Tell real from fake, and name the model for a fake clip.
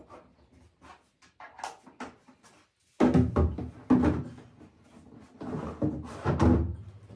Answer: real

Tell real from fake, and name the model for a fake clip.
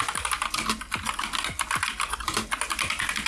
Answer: real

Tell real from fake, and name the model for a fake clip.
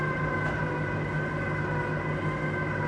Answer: real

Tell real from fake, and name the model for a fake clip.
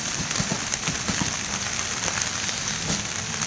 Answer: real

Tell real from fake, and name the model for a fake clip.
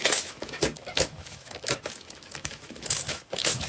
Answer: fake, autoencoder, DAC-VAE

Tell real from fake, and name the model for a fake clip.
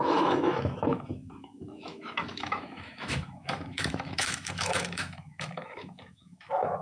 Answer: fake, autoencoder, DAC-VAE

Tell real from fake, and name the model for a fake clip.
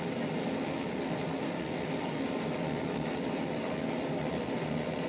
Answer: real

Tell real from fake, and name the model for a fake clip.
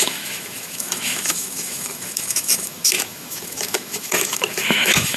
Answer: fake, autoencoder, DAC-VAE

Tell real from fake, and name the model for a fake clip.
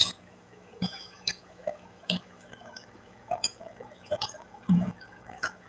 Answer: fake, autoencoder, DAC-VAE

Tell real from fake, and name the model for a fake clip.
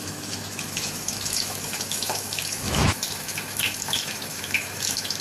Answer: fake, autoencoder, DAC-VAE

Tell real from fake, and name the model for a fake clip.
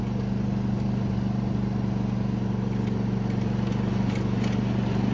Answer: real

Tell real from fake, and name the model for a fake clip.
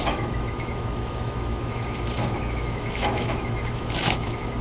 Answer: fake, autoencoder, DAC-VAE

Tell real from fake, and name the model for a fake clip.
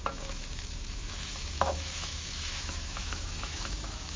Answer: fake, autoencoder, DAC-VAE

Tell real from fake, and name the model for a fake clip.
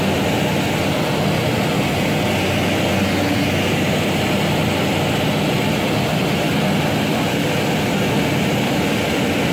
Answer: real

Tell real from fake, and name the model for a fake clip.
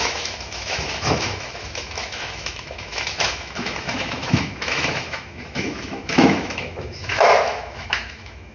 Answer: fake, autoencoder, DAC-VAE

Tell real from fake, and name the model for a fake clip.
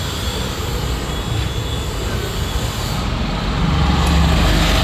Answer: real